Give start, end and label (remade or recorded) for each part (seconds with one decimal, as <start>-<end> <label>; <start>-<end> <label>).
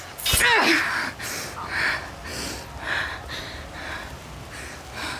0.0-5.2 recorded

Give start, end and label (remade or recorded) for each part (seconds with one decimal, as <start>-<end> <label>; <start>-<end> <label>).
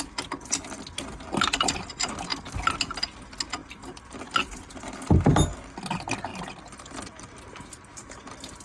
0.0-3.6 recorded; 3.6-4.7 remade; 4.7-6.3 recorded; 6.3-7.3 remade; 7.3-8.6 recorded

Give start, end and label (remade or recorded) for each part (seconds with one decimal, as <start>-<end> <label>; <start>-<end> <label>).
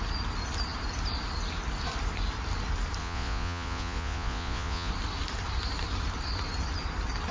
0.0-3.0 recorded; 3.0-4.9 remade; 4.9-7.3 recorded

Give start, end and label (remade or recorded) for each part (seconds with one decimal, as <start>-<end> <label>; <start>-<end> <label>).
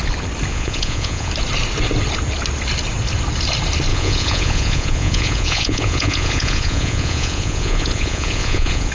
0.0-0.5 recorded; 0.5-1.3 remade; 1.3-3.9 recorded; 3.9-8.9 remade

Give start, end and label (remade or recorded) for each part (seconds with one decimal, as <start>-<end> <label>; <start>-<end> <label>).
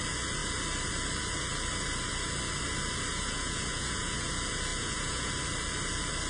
0.0-3.1 recorded; 3.1-4.3 remade; 4.3-4.7 recorded; 4.7-5.3 remade; 5.3-6.3 recorded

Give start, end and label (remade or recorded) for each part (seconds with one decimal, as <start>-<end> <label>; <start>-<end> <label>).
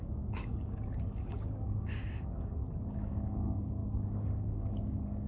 0.0-5.3 remade